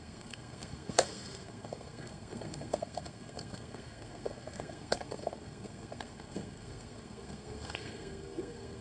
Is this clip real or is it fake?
fake